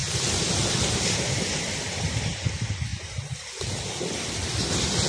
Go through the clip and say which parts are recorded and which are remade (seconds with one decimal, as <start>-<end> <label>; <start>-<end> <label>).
0.0-2.9 recorded; 2.9-3.4 remade; 3.4-5.1 recorded